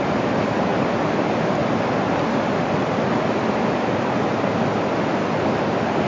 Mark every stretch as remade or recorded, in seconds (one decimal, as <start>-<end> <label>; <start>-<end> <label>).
0.0-6.1 recorded